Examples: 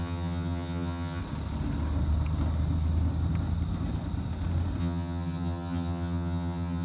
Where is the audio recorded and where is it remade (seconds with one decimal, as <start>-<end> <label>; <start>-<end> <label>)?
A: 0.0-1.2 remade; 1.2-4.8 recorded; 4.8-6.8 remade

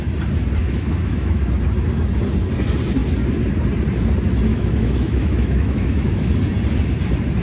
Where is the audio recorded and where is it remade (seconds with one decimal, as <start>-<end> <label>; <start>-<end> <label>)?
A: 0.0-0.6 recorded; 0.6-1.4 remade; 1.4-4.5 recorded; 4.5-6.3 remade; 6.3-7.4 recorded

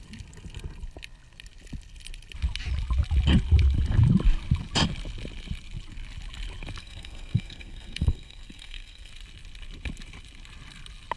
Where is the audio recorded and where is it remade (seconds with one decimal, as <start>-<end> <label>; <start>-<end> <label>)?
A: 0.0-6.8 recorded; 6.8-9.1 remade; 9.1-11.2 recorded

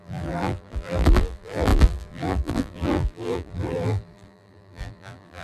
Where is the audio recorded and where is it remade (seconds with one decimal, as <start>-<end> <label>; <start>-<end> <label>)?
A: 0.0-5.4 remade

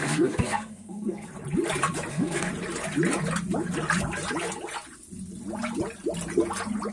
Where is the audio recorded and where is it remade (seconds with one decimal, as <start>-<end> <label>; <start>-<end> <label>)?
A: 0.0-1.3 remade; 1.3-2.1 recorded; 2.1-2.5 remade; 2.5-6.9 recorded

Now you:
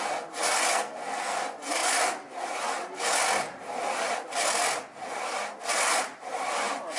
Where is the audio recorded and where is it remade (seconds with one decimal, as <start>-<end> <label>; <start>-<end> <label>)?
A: 0.0-0.7 recorded; 0.7-1.4 remade; 1.4-7.0 recorded